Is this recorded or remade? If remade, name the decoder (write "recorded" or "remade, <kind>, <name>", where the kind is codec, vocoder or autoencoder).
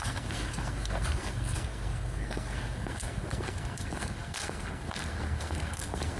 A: remade, codec, SNAC